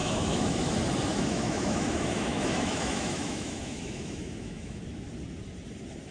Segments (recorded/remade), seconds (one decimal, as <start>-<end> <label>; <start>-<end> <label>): 0.0-0.7 remade; 0.7-1.1 recorded; 1.1-4.8 remade; 4.8-6.1 recorded